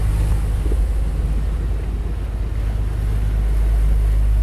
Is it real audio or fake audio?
real